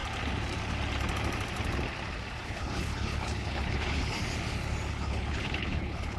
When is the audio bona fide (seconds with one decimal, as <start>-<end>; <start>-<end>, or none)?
0.0-2.4; 4.2-4.9